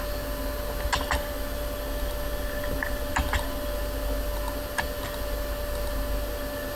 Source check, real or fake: real